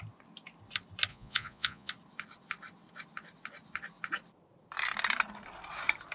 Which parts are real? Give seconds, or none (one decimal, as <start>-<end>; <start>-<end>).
0.0-1.1; 1.9-6.1